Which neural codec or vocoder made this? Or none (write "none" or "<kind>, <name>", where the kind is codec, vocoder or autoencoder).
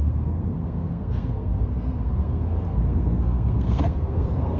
codec, SNAC